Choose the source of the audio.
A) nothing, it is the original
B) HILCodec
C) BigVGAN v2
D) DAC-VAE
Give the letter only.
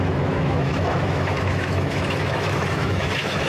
D